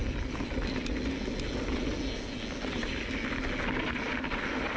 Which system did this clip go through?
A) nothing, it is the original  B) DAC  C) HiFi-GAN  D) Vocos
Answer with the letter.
A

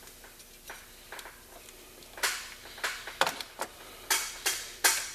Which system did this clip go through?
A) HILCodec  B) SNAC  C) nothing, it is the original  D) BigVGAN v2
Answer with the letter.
C